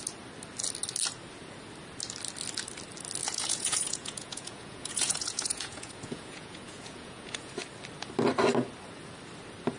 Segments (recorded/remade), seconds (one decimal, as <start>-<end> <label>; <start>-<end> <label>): 0.0-3.2 recorded; 3.2-7.5 remade; 7.5-9.8 recorded